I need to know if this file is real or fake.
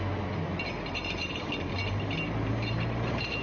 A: real